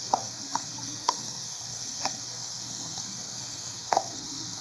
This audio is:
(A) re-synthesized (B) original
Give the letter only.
A